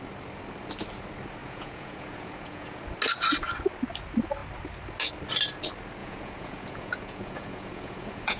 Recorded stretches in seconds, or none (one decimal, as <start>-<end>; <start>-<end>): 0.0-1.4; 2.8-6.0